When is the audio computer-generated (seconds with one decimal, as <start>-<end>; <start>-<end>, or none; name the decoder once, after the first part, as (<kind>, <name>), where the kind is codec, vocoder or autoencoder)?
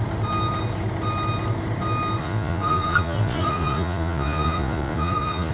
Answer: 2.2-5.5 (vocoder, Vocos)